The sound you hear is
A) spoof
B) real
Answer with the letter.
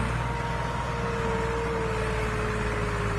B